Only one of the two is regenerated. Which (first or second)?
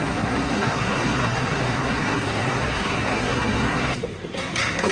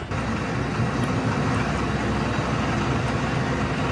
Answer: first